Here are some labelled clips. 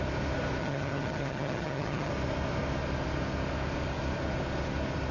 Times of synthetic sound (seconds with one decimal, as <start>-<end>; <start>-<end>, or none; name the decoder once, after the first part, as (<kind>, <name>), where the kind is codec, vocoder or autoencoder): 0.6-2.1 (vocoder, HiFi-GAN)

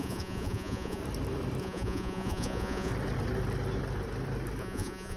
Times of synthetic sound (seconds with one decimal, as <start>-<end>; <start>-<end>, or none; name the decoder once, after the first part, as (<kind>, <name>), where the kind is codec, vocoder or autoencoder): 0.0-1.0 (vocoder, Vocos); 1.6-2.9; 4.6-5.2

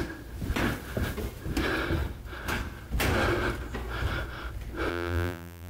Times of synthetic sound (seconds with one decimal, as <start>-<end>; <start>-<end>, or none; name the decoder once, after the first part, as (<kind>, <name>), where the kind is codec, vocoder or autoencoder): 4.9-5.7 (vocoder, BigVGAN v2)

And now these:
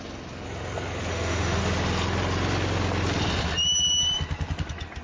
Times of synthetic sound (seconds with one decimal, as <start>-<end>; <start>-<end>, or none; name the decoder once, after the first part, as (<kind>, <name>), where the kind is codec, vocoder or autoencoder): 1.1-1.6 (autoencoder, DAC-VAE)

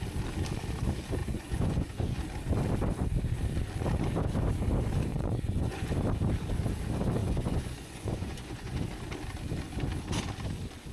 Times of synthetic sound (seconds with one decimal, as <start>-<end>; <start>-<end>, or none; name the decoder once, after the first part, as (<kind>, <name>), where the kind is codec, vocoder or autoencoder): 1.2-2.2 (vocoder, Vocos); 5.1-5.9; 7.2-8.8

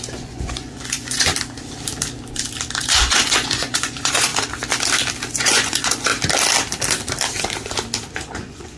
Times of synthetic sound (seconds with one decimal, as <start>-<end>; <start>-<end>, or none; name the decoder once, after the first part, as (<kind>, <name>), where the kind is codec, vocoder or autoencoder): 0.0-1.3 (vocoder, Vocos); 2.8-4.3; 5.3-6.1; 8.1-8.8

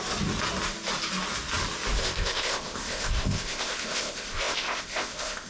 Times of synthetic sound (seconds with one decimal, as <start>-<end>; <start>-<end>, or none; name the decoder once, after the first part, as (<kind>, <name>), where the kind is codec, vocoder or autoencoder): 2.0-5.5 (codec, ZipCodec)